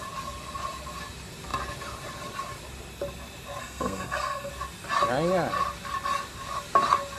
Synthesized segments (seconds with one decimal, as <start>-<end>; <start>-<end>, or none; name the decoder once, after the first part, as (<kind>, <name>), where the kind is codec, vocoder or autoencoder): 3.6-4.5 (codec, SNAC)